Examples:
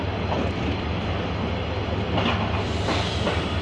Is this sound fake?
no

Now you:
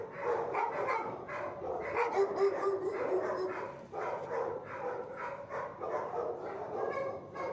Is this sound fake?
yes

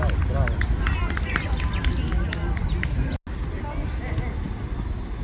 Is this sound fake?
no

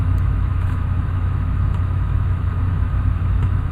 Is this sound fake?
yes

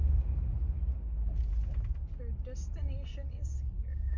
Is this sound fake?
no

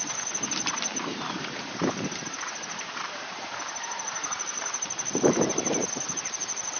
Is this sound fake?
yes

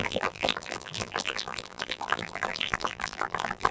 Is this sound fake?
yes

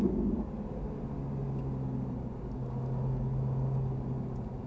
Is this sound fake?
no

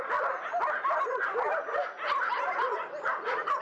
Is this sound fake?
no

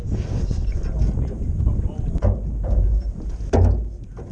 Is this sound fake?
no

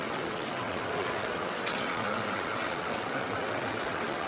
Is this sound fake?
yes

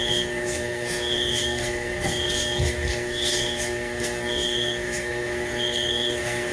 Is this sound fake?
yes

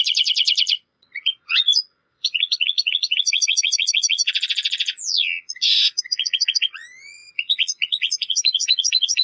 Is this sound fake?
yes